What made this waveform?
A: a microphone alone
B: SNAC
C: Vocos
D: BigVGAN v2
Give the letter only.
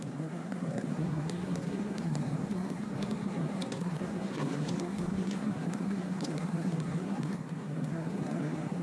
B